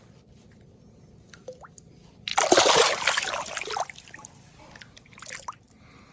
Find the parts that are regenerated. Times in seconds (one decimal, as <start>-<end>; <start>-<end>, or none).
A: none